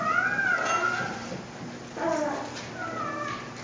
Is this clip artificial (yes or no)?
no